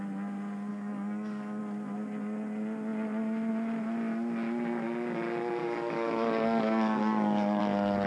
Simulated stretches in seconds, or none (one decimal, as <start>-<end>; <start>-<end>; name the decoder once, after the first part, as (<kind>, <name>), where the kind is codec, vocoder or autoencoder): 0.7-1.6 (codec, DAC); 5.6-7.6